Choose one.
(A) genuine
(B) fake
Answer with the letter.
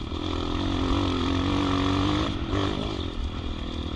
A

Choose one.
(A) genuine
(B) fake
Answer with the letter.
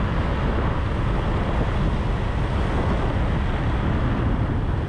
A